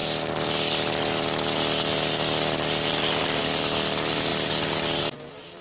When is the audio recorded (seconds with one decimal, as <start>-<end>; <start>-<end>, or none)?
0.0-5.6